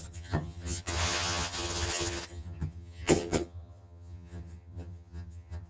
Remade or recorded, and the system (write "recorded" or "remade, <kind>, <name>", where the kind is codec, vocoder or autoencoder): remade, vocoder, HiFi-GAN